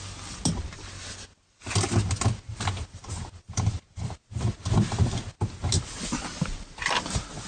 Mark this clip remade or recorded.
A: recorded